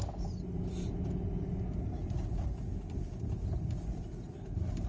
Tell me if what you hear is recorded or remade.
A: recorded